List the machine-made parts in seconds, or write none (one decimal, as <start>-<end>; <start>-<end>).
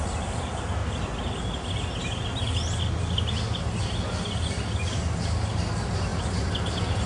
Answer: none